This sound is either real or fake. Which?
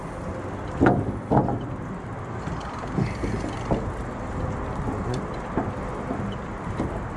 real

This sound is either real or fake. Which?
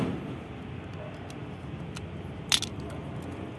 real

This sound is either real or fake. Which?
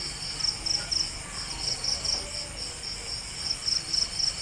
real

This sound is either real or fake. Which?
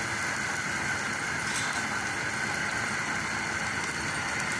real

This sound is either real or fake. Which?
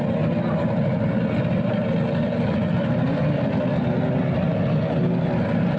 real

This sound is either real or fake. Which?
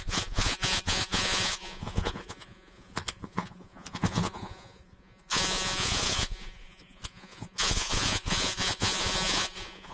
fake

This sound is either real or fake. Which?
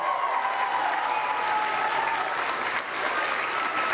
real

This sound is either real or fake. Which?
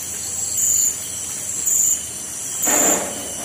real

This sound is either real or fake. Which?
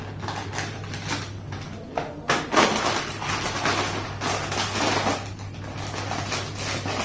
real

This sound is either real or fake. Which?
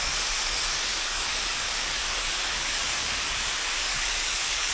fake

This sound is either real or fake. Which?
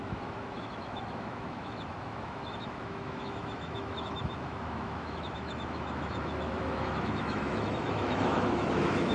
fake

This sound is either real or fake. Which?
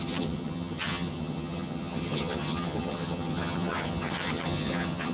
fake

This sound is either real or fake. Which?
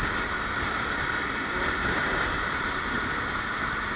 fake